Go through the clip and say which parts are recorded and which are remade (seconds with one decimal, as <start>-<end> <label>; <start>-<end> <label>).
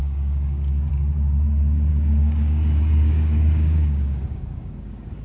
0.0-0.9 remade; 0.9-1.9 recorded; 1.9-5.2 remade